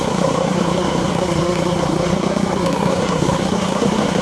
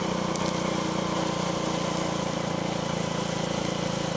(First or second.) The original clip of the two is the second